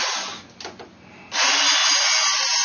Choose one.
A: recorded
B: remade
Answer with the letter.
A